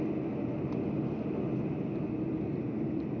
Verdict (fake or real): real